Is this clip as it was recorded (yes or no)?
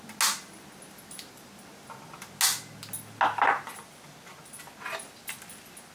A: yes